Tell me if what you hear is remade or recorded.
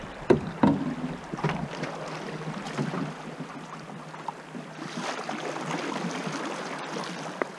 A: recorded